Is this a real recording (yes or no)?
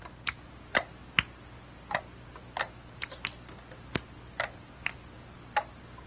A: yes